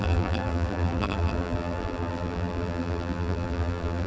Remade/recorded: remade